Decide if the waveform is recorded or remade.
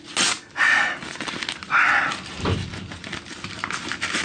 recorded